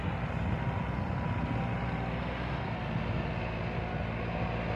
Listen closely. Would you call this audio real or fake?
real